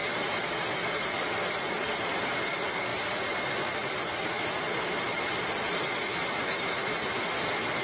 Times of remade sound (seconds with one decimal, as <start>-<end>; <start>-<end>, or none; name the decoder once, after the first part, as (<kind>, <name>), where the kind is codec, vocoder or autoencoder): none